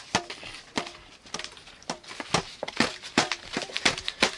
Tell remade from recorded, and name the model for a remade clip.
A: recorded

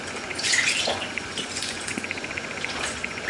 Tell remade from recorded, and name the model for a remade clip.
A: remade, vocoder, Vocos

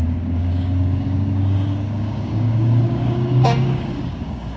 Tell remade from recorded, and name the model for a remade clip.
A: remade, codec, DAC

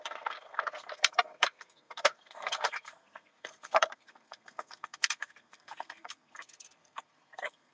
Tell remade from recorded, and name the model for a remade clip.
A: remade, codec, SNAC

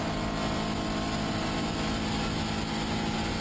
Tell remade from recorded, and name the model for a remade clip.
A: recorded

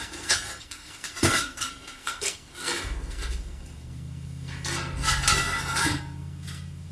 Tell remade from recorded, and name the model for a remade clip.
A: remade, codec, SNAC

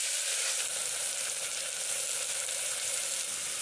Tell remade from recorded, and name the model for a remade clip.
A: recorded